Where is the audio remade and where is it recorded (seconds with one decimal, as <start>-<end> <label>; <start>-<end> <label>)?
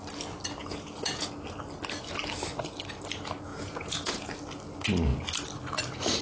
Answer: 0.0-0.6 recorded; 0.6-1.3 remade; 1.3-3.5 recorded; 3.5-4.3 remade; 4.3-6.2 recorded